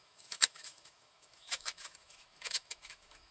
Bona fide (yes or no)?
no